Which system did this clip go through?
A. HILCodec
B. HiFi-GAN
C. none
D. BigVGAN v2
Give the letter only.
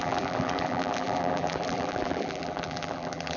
D